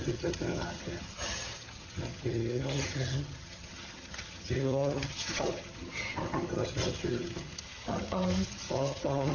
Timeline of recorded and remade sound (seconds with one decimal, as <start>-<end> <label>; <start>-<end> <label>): 0.0-9.3 remade